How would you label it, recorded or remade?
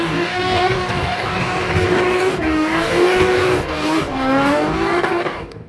remade